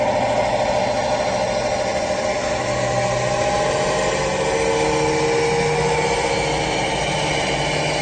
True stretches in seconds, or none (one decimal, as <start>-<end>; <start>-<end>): 0.0-8.0